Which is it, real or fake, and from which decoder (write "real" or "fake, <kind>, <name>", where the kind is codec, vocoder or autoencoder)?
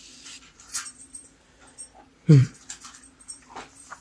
fake, vocoder, BigVGAN v2